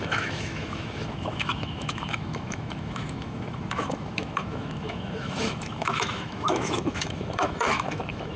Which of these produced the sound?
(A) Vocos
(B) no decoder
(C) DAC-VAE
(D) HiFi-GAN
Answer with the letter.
C